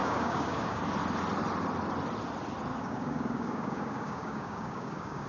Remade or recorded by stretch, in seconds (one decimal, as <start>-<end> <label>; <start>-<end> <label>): 0.0-0.8 remade; 0.8-2.7 recorded; 2.7-5.3 remade